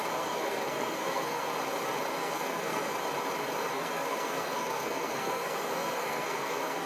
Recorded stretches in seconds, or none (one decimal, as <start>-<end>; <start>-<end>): 1.5-2.1; 2.9-3.7